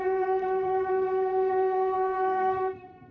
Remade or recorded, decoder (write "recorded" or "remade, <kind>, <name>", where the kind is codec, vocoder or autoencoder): remade, codec, SNAC